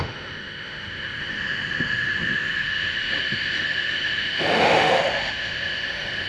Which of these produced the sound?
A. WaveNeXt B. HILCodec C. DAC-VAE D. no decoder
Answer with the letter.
C